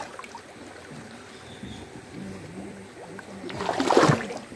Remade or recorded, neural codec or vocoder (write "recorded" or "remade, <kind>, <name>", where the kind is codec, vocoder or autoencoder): recorded